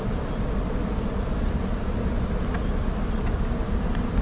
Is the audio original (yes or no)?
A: yes